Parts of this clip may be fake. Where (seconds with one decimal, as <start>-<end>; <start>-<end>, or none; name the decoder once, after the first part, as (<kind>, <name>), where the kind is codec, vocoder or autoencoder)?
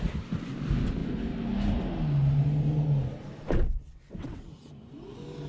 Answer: 3.8-4.4 (vocoder, WaveNeXt)